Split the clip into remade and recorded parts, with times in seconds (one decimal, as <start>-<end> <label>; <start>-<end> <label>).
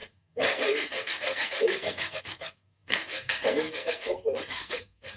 0.0-5.2 remade